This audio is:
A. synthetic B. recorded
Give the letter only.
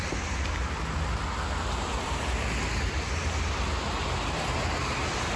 B